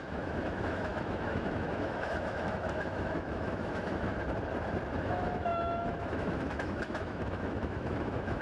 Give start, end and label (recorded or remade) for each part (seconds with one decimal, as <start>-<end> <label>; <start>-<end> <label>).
0.0-4.1 remade; 4.1-5.0 recorded; 5.0-8.4 remade